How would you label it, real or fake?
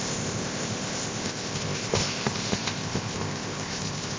fake